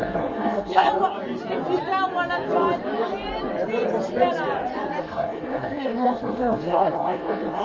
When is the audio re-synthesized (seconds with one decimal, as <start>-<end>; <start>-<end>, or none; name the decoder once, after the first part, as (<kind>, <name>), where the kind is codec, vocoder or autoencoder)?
0.0-0.9 (codec, SNAC); 5.0-7.6